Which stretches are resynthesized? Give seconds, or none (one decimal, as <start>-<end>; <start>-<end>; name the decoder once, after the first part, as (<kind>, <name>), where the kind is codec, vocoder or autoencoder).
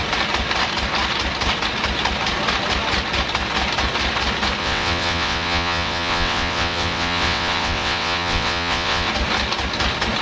4.6-9.1 (vocoder, WaveNeXt)